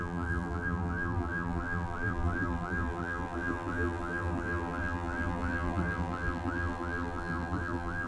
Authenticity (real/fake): fake